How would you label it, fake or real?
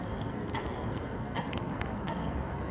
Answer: fake